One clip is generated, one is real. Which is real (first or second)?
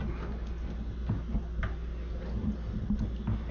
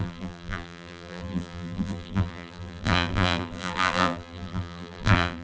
first